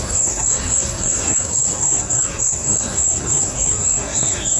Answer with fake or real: fake